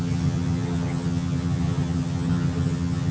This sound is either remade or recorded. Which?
remade